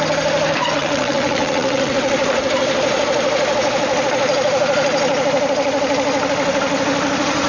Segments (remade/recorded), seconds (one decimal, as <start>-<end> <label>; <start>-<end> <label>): 0.0-0.8 recorded; 0.8-1.9 remade; 1.9-7.5 recorded